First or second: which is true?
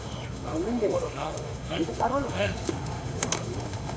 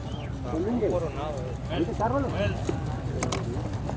second